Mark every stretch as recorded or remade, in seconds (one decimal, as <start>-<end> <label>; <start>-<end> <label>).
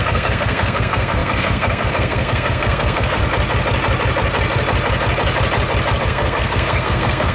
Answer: 0.0-3.2 remade; 3.2-6.0 recorded; 6.0-7.3 remade